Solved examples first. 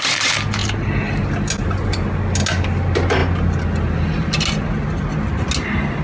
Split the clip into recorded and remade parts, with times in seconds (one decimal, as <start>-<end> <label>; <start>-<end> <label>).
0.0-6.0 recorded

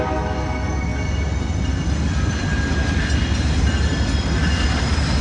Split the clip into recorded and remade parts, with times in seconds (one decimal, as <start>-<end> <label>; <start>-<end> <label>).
0.0-5.2 recorded

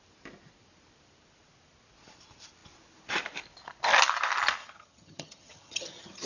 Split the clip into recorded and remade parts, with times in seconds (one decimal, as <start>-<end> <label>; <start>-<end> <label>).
0.0-4.6 recorded; 4.6-6.3 remade

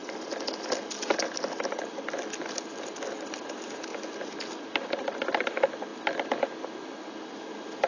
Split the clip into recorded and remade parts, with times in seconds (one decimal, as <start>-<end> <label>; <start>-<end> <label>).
0.0-7.9 recorded

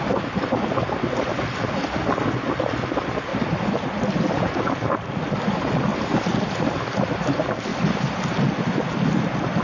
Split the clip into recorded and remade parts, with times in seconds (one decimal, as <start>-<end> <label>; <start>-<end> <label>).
0.0-3.3 recorded; 3.3-4.5 remade; 4.5-5.9 recorded; 5.9-6.6 remade; 6.6-7.7 recorded; 7.7-8.3 remade; 8.3-9.6 recorded

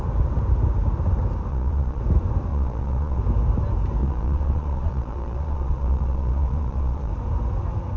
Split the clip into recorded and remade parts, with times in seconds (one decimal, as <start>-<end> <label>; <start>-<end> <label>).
0.0-1.5 recorded; 1.5-2.0 remade; 2.0-2.5 recorded; 2.5-3.2 remade; 3.2-4.0 recorded; 4.0-7.1 remade; 7.1-8.0 recorded

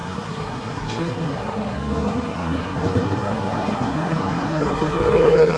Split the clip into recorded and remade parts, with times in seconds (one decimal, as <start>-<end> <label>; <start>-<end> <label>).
0.0-5.6 remade

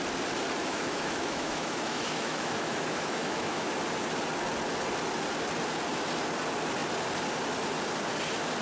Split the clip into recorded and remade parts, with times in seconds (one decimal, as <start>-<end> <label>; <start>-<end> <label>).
0.0-0.6 recorded; 0.6-3.7 remade; 3.7-8.6 recorded